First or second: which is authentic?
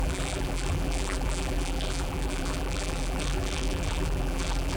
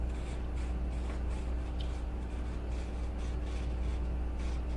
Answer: second